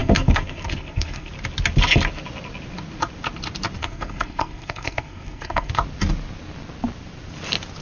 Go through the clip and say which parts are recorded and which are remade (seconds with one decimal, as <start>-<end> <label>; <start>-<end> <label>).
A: 0.0-1.3 remade; 1.3-3.8 recorded; 3.8-5.7 remade; 5.7-7.8 recorded